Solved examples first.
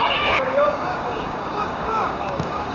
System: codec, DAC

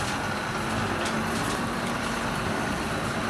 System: none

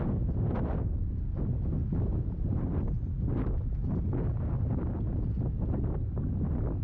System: none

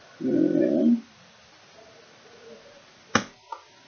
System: none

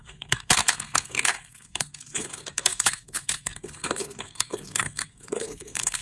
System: codec, SNAC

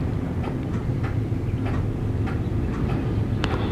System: none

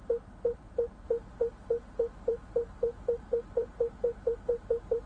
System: vocoder, BigVGAN v2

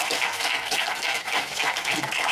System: codec, SNAC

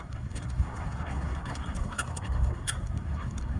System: codec, SNAC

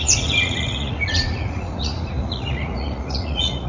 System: vocoder, Vocos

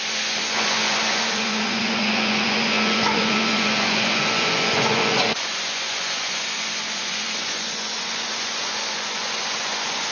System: vocoder, Vocos